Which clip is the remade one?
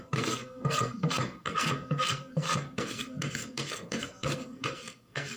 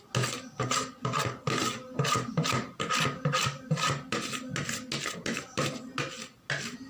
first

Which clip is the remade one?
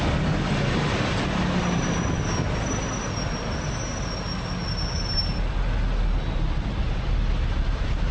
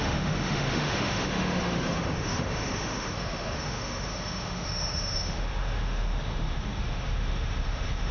second